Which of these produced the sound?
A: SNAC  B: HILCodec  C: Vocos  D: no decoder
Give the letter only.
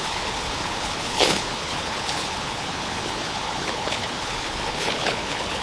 B